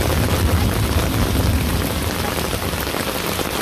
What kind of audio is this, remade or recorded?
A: recorded